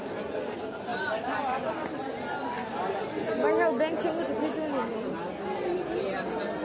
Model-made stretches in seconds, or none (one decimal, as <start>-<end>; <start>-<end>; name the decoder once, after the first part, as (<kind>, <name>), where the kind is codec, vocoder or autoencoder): none